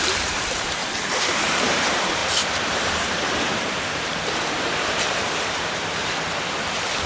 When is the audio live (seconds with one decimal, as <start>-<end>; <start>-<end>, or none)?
0.8-1.4; 6.0-7.1